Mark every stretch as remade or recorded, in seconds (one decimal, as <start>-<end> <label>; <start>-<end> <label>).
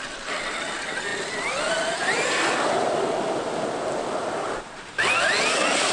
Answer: 0.0-5.9 recorded